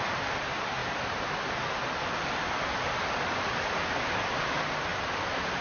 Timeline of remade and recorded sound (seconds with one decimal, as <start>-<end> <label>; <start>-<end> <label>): 0.0-5.6 recorded